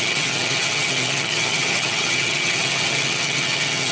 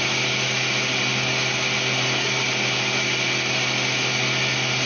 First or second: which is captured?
second